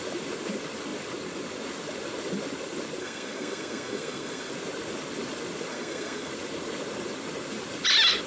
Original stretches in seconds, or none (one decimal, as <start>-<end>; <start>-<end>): 0.0-3.0; 4.5-5.7; 6.3-8.3